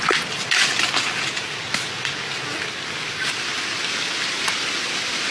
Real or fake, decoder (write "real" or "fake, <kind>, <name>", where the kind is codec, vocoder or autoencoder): real